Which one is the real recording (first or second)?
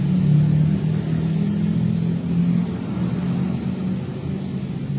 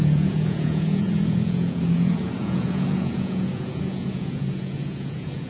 first